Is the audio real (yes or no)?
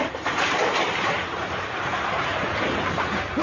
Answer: no